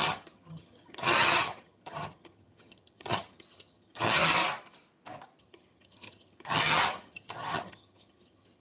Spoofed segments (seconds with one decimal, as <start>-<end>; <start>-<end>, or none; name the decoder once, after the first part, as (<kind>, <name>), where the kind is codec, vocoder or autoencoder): 0.0-4.4 (vocoder, HiFi-GAN); 5.4-8.6